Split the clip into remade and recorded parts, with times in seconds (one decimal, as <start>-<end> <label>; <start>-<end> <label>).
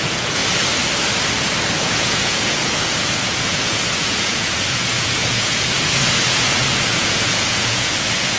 0.0-0.4 remade; 0.4-1.7 recorded; 1.7-8.4 remade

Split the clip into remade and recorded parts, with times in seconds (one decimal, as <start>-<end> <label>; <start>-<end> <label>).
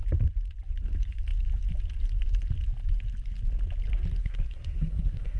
0.0-4.2 recorded; 4.2-5.4 remade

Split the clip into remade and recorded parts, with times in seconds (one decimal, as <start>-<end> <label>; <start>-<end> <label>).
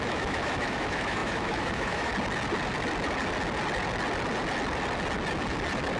0.0-2.1 remade; 2.1-6.0 recorded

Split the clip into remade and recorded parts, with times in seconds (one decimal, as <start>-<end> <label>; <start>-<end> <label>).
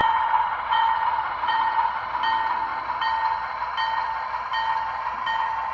0.0-1.9 remade; 1.9-5.7 recorded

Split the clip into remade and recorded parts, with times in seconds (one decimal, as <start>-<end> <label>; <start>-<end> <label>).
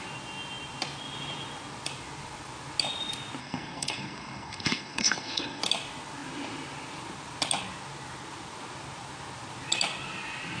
0.0-3.4 recorded; 3.4-5.6 remade; 5.6-10.6 recorded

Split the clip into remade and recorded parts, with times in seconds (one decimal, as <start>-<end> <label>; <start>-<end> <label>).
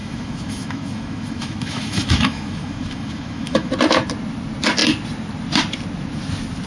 0.0-3.7 remade; 3.7-6.7 recorded